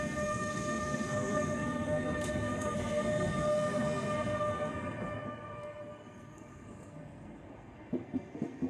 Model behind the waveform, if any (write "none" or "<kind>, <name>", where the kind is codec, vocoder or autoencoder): codec, SNAC